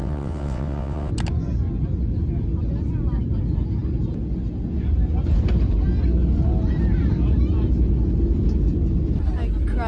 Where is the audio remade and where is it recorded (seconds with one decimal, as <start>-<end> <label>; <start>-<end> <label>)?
0.0-1.1 remade; 1.1-9.9 recorded